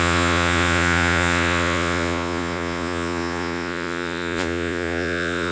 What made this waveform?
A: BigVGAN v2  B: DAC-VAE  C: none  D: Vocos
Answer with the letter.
D